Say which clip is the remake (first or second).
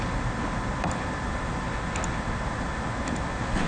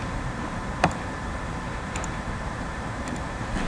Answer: second